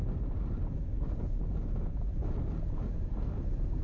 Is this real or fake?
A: real